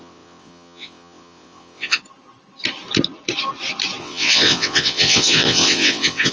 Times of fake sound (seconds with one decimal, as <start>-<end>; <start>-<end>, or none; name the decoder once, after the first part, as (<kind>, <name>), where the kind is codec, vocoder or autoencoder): 0.0-2.0 (vocoder, WaveNeXt); 4.0-6.3